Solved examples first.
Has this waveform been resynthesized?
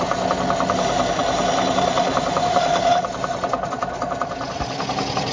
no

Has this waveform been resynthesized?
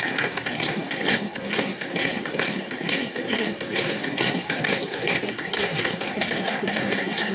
yes